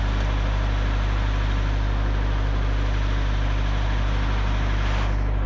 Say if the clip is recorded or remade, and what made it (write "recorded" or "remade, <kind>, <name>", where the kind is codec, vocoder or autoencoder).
recorded